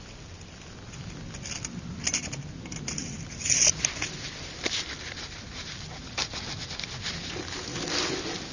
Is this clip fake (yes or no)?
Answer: no